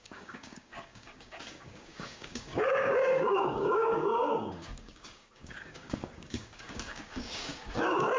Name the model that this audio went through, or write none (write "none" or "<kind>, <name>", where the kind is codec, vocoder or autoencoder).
codec, DAC